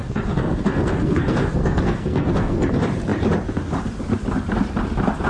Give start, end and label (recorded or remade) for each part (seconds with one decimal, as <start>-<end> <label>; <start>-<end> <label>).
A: 0.0-2.6 remade; 2.6-5.3 recorded